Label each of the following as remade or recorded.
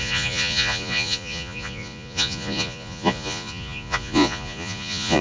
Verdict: remade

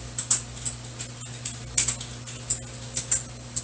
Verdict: recorded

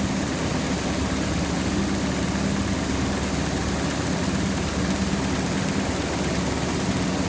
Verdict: recorded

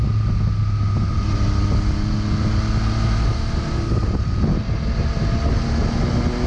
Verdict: recorded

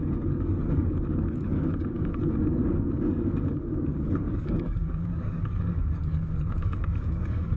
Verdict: remade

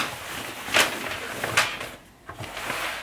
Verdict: recorded